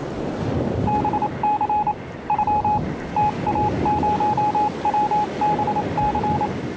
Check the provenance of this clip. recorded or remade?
recorded